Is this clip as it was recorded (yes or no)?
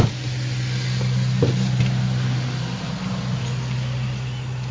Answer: yes